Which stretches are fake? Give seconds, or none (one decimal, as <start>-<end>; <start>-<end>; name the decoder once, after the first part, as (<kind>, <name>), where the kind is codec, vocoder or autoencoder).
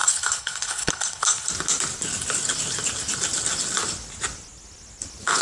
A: 0.0-1.5 (codec, HILCodec)